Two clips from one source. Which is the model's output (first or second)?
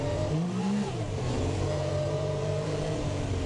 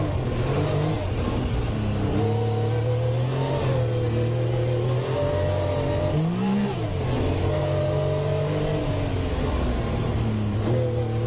first